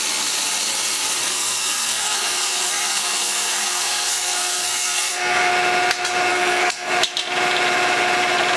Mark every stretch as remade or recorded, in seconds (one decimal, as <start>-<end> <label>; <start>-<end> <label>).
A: 0.0-1.2 recorded; 1.2-5.5 remade; 5.5-6.3 recorded; 6.3-6.9 remade; 6.9-8.6 recorded